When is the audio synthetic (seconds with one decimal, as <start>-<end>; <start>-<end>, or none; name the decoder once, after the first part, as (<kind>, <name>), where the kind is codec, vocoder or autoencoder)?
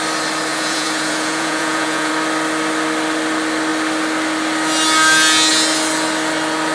0.5-2.1 (vocoder, Vocos)